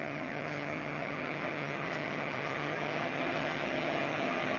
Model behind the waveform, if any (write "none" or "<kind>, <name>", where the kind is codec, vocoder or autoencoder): vocoder, HiFi-GAN